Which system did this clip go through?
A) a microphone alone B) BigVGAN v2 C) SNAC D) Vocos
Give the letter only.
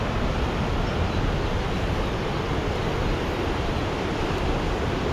A